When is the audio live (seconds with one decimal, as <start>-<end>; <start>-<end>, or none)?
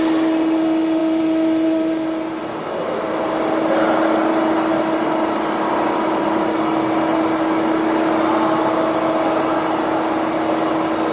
none